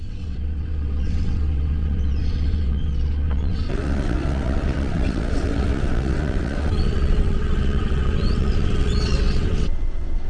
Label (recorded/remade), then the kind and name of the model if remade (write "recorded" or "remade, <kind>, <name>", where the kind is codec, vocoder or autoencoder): remade, vocoder, WaveNeXt